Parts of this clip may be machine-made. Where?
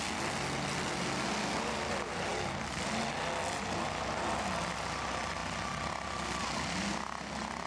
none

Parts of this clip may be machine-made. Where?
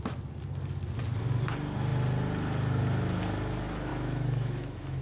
3.9-5.0 (autoencoder, DAC-VAE)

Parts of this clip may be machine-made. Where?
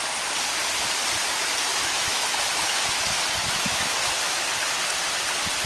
1.7-3.0 (autoencoder, DAC-VAE); 3.4-4.4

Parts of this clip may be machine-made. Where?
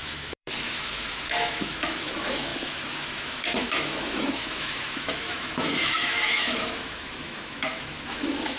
0.0-8.6 (autoencoder, DAC-VAE)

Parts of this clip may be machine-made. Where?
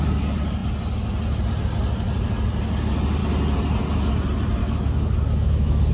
4.6-5.9 (autoencoder, DAC-VAE)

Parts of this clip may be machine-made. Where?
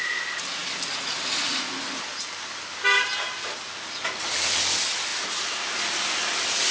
none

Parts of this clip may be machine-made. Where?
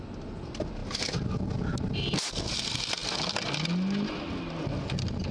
none